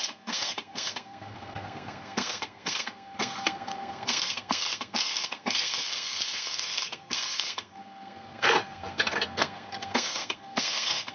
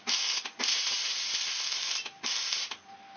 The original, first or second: second